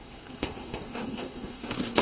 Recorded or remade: remade